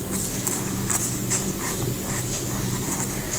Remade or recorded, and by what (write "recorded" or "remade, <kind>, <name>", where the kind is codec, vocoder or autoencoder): remade, codec, DAC